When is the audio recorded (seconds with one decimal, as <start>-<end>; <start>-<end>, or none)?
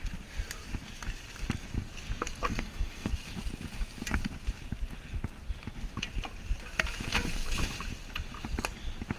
0.0-2.5; 3.1-9.2